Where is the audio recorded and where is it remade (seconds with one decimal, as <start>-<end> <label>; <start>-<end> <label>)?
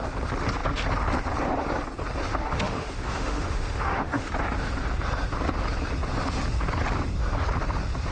0.0-2.3 recorded; 2.3-4.3 remade; 4.3-8.1 recorded